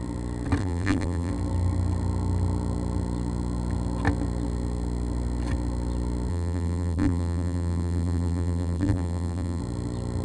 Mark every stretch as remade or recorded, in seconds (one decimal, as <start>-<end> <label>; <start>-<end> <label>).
0.0-0.6 recorded; 0.6-1.3 remade; 1.3-6.3 recorded; 6.3-9.6 remade; 9.6-10.2 recorded